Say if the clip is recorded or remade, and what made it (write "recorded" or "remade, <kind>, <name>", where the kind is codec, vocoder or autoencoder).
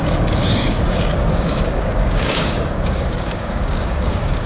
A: remade, codec, DAC